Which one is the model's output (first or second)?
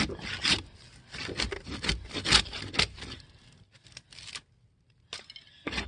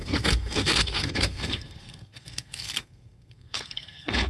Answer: second